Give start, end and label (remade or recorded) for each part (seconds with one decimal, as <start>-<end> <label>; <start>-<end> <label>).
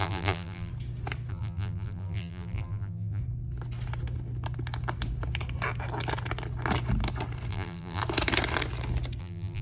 0.0-0.7 remade; 0.7-1.3 recorded; 1.3-3.2 remade; 3.2-7.5 recorded; 7.5-8.0 remade; 8.0-9.2 recorded; 9.2-9.6 remade